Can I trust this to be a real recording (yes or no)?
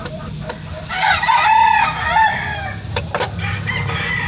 yes